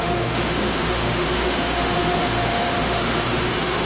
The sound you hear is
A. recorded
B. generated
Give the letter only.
B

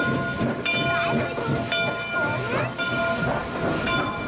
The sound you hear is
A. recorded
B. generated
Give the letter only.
A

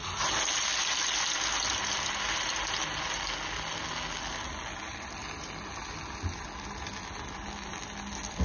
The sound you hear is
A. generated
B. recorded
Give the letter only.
B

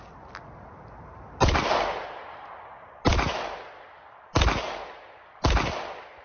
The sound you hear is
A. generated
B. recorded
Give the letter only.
B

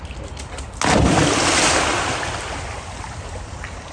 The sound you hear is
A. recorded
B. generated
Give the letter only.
A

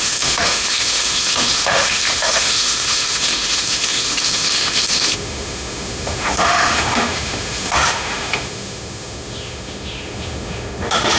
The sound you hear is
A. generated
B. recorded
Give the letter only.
A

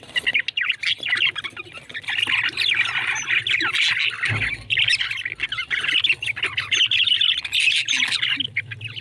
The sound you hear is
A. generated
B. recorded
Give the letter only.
B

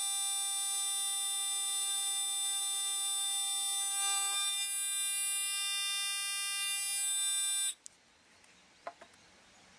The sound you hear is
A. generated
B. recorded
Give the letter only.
B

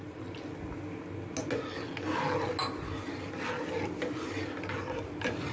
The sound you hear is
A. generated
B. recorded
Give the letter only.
B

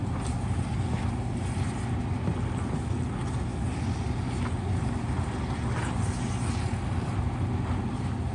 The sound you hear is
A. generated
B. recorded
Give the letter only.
B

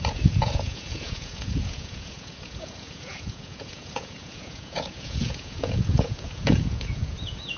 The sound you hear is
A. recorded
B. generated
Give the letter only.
B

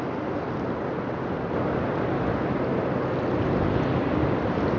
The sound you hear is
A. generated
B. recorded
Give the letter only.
B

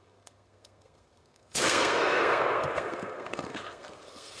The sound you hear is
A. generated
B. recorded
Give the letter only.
A